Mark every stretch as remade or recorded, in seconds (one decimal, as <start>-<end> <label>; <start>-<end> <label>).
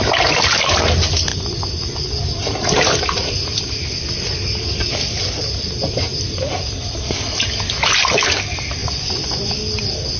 0.0-1.3 recorded; 1.3-2.2 remade; 2.2-8.8 recorded; 8.8-9.5 remade; 9.5-10.2 recorded